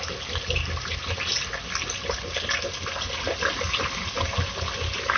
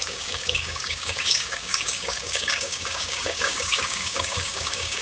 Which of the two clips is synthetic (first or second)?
second